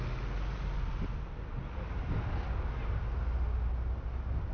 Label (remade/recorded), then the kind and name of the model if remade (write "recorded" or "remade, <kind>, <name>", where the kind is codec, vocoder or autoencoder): recorded